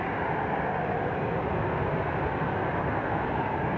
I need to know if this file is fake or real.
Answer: real